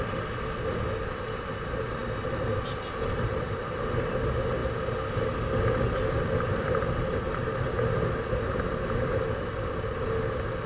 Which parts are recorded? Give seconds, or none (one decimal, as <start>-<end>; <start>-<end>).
0.0-10.7